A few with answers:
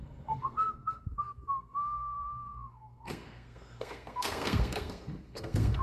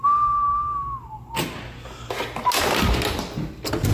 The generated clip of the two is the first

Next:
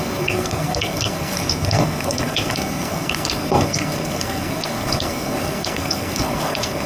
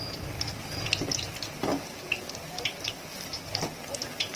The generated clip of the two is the first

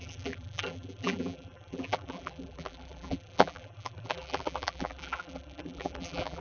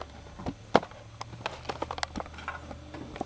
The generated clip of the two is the first